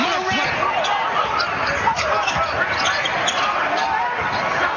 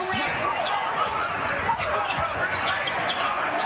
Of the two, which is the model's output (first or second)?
second